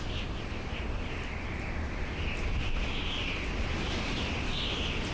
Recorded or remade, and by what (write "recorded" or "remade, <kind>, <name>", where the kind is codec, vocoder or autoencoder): recorded